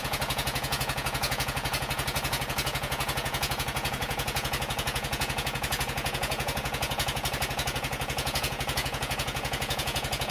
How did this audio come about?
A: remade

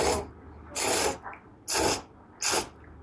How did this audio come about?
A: recorded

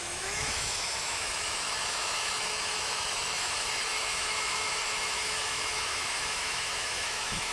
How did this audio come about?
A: remade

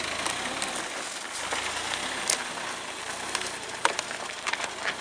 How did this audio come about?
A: recorded